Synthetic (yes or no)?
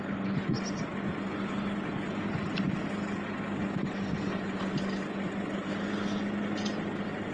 no